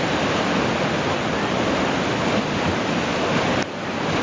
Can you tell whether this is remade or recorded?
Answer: recorded